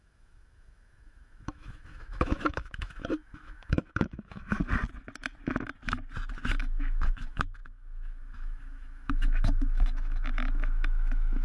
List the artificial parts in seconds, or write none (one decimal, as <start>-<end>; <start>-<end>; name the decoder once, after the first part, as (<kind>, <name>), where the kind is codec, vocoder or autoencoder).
0.0-4.6 (autoencoder, DAC-VAE); 6.6-11.4